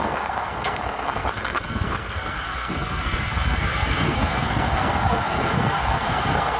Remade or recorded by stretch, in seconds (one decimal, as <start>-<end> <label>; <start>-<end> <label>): 0.0-6.6 remade